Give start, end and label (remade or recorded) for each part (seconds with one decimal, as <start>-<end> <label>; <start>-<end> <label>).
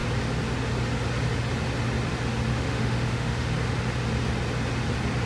0.0-2.5 recorded; 2.5-3.5 remade; 3.5-5.3 recorded